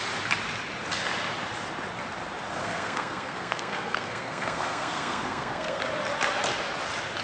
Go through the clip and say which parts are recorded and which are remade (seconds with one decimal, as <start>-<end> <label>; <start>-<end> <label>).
0.0-2.6 recorded; 2.6-5.8 remade; 5.8-7.2 recorded